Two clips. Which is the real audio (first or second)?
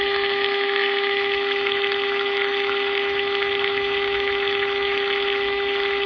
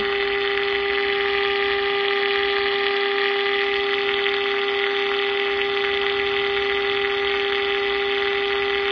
second